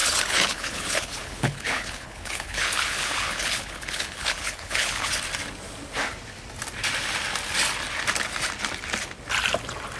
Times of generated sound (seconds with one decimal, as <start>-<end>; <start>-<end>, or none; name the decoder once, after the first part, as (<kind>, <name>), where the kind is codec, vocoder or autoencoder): 0.0-5.1 (codec, HILCodec)